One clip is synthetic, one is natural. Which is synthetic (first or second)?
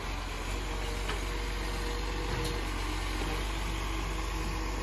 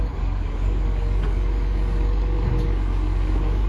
second